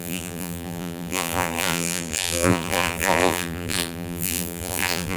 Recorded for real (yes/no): no